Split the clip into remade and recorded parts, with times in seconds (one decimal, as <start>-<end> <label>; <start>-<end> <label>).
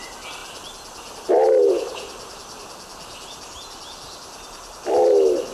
0.0-5.5 recorded